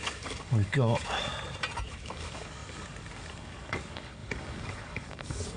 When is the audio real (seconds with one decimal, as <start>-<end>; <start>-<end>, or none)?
1.3-1.9